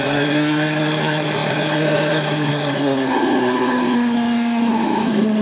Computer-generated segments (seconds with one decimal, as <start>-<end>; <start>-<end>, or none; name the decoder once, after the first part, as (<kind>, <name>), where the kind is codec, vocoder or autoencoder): 0.0-5.4 (codec, SNAC)

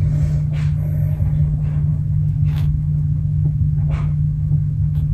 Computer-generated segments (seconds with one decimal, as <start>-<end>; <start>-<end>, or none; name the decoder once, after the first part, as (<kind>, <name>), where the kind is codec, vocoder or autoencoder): 1.9-5.1 (autoencoder, DAC-VAE)